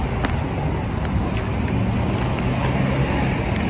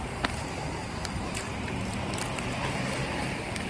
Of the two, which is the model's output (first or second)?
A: second